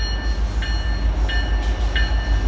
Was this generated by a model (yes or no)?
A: no